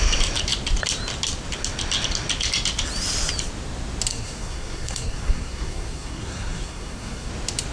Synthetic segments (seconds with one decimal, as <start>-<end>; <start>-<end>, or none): 4.1-7.3